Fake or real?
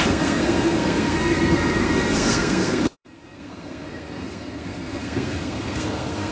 fake